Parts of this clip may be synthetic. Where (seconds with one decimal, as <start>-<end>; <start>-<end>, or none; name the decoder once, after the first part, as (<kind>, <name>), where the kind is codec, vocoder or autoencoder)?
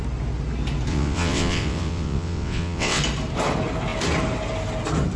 0.9-3.0 (vocoder, WaveNeXt)